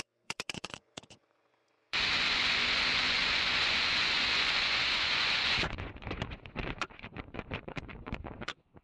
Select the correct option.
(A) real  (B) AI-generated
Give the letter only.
B